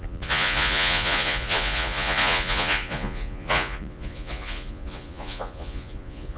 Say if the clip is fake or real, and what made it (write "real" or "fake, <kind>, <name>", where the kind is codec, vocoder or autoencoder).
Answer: fake, vocoder, Vocos